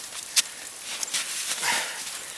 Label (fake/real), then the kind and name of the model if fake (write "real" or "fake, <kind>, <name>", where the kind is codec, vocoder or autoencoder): real